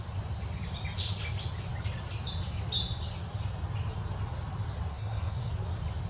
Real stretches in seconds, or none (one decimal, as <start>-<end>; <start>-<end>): 0.0-4.9; 5.5-6.1